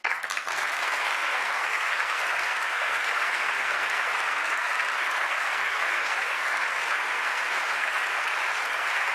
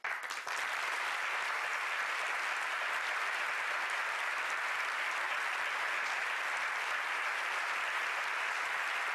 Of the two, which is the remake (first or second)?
first